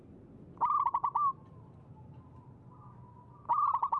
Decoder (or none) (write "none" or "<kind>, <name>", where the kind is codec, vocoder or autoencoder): none